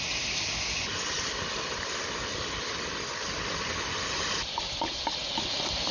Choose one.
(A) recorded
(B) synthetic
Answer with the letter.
A